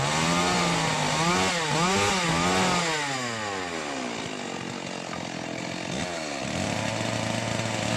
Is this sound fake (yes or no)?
no